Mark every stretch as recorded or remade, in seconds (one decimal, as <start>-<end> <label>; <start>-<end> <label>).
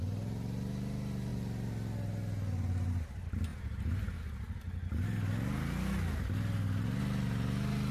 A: 0.0-7.9 recorded